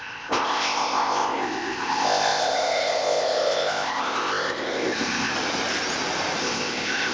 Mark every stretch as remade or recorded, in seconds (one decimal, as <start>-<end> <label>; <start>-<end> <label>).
0.0-5.3 remade; 5.3-6.4 recorded; 6.4-7.1 remade